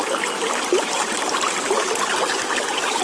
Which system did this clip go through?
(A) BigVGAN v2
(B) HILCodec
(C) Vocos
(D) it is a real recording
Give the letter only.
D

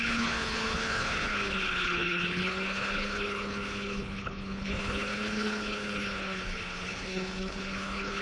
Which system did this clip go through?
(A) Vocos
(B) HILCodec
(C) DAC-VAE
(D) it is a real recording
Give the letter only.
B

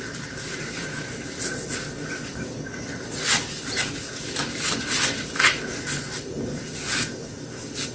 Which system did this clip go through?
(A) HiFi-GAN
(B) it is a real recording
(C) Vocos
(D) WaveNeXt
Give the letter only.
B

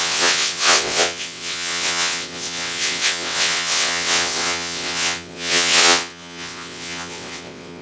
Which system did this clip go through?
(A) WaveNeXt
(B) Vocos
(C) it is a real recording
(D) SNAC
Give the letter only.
A